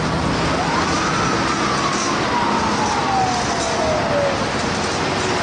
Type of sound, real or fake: real